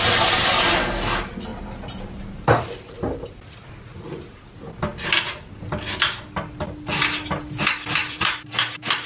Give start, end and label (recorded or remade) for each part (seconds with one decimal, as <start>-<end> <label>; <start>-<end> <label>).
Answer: 0.0-1.5 recorded; 1.5-3.7 remade; 3.7-8.0 recorded; 8.0-9.1 remade